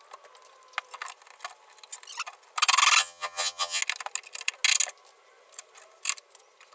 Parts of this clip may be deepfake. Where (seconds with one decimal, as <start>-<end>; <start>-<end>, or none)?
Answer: 3.0-3.8